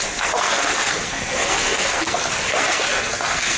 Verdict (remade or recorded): remade